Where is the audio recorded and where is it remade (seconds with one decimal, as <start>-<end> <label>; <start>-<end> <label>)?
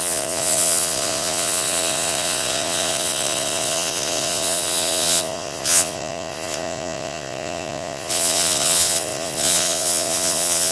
0.0-10.7 remade